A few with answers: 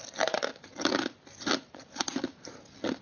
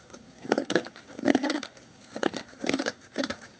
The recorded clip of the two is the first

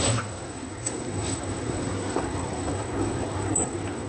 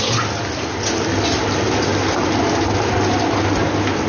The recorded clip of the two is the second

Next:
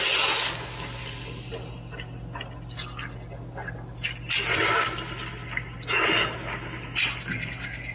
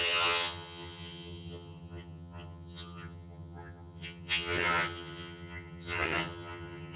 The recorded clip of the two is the first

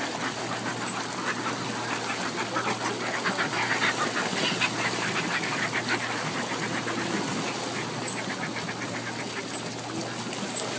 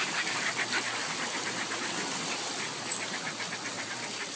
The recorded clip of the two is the first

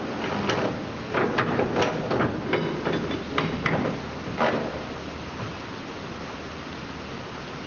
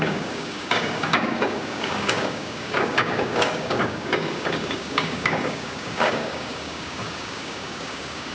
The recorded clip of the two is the first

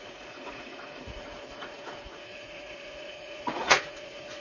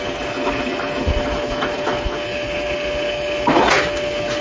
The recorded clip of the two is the second